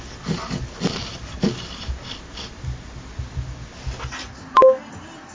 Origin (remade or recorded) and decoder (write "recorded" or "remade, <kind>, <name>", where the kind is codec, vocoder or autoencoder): recorded